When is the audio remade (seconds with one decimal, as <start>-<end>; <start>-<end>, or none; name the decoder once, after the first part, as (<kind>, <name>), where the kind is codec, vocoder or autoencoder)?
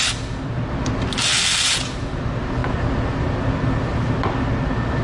none